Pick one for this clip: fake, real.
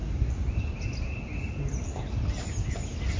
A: real